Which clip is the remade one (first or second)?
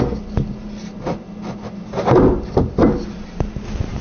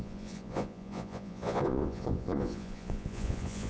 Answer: second